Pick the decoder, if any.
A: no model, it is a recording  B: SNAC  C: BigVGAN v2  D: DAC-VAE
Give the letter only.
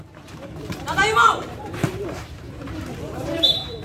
C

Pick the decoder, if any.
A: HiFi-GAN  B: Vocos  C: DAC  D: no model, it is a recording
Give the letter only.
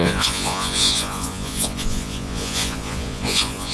B